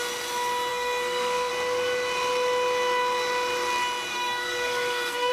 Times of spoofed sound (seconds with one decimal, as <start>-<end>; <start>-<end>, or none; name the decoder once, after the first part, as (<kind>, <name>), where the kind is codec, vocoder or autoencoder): 0.7-1.5 (codec, SNAC); 4.1-5.3